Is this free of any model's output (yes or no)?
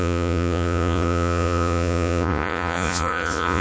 no